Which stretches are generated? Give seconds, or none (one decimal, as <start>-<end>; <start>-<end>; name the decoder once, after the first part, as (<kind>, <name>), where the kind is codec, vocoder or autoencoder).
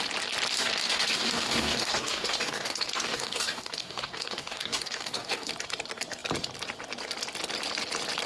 0.5-5.5 (codec, DAC)